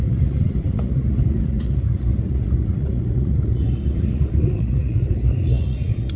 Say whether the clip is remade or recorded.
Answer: remade